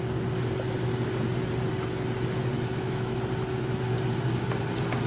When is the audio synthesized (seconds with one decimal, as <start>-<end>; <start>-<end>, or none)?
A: 2.5-3.2